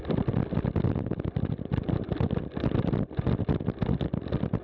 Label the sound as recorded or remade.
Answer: recorded